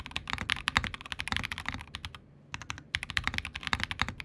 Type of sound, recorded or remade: recorded